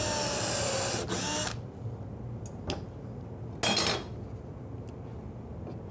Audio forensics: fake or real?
real